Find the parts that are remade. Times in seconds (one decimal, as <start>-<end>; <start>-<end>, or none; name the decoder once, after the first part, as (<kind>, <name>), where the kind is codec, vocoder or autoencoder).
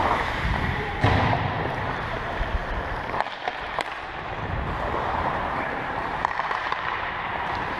0.0-2.6 (vocoder, BigVGAN v2); 5.1-7.8